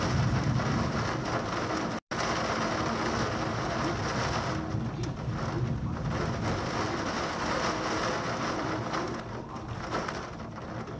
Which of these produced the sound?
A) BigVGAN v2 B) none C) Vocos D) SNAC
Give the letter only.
B